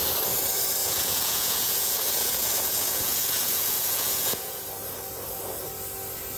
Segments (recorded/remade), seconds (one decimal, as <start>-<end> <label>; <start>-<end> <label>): 0.0-0.8 recorded; 0.8-4.6 remade; 4.6-6.4 recorded